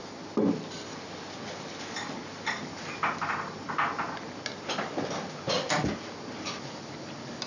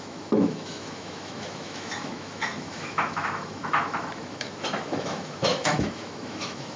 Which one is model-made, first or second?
second